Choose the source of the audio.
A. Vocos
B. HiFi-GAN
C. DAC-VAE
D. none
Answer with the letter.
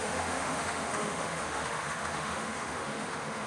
C